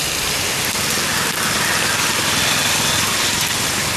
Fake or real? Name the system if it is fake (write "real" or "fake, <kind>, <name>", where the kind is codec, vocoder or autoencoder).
real